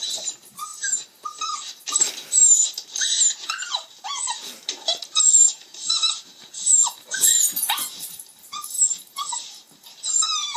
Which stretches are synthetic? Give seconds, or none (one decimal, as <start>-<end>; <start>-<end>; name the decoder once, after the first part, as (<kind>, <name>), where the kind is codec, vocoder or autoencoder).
0.0-0.7 (vocoder, BigVGAN v2); 3.3-10.6